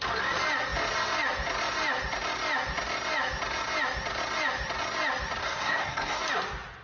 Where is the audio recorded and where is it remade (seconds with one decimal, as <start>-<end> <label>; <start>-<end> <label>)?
0.0-5.4 recorded; 5.4-6.2 remade; 6.2-6.8 recorded